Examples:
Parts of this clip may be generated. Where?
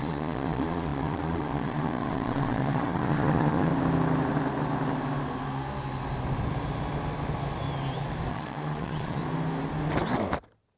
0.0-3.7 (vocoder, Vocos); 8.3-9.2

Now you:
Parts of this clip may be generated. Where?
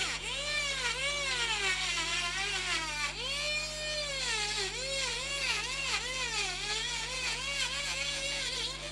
0.0-0.6 (vocoder, Vocos); 5.1-8.5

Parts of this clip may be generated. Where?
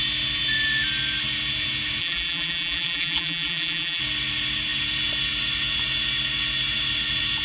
2.0-4.0 (vocoder, BigVGAN v2)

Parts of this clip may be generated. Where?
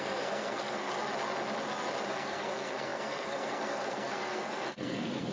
0.0-0.9 (codec, SNAC); 2.1-5.3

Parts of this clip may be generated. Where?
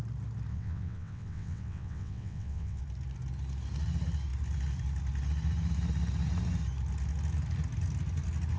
0.5-2.8 (vocoder, WaveNeXt)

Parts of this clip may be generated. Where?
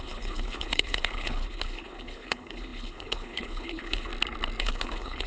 0.0-4.1 (codec, HILCodec); 4.6-5.3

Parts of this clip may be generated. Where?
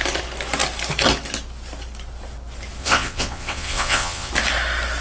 2.8-4.3 (vocoder, WaveNeXt)